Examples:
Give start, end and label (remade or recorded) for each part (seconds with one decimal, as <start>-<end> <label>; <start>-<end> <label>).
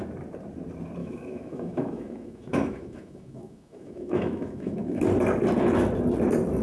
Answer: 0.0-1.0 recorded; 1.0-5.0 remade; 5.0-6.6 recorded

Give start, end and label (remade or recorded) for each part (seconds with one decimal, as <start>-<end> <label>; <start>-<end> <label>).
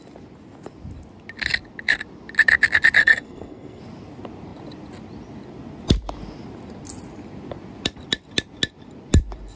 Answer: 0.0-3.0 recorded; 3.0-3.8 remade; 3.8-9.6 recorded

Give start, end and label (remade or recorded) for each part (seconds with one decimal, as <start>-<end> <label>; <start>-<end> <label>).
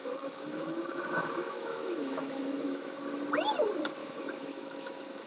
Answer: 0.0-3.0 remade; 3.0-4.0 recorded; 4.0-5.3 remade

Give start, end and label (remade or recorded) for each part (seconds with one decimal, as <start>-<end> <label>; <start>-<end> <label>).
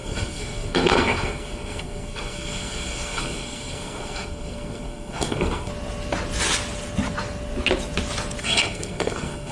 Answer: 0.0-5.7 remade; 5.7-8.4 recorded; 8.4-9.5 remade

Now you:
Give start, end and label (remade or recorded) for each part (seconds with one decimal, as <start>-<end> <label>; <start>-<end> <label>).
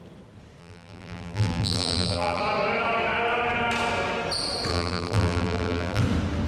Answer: 0.0-0.6 recorded; 0.6-2.4 remade; 2.4-4.7 recorded; 4.7-6.0 remade; 6.0-6.5 recorded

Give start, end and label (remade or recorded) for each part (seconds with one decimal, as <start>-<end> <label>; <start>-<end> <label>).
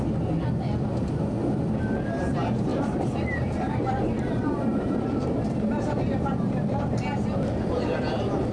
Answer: 0.0-2.7 recorded; 2.7-6.6 remade; 6.6-8.5 recorded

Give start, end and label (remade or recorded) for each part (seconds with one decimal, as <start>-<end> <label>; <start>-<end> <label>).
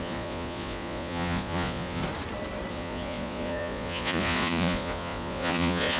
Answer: 0.0-2.0 remade; 2.0-2.7 recorded; 2.7-6.0 remade